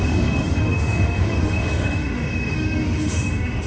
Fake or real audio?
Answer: fake